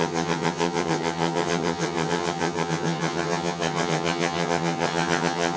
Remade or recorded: remade